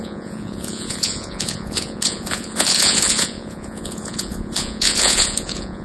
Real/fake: fake